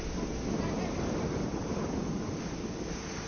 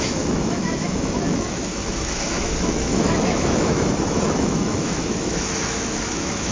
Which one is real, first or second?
first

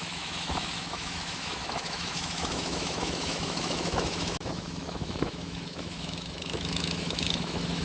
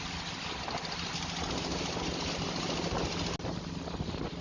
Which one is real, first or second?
second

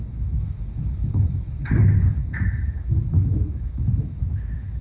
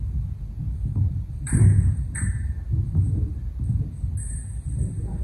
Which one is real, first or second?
second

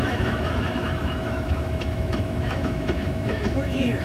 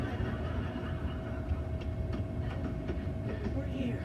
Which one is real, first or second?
second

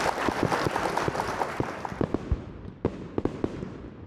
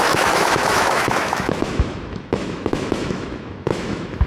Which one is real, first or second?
first